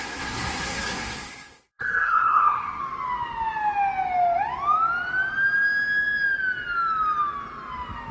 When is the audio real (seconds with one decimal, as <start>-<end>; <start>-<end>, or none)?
2.8-8.1